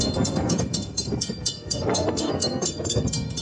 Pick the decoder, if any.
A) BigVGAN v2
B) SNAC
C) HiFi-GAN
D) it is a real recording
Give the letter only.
B